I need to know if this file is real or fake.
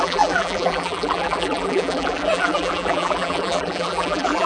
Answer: fake